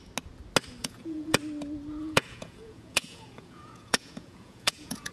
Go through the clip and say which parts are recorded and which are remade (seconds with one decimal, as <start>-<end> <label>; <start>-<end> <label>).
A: 0.0-0.8 recorded; 0.8-1.4 remade; 1.4-2.0 recorded; 2.0-5.1 remade